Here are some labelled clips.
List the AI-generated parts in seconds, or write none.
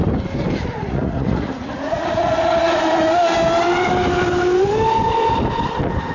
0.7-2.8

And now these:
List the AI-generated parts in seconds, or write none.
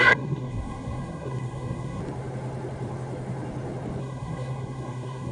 0.0-2.0; 4.0-5.3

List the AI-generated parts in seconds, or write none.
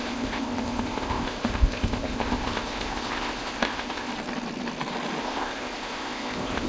0.0-4.1; 5.2-6.7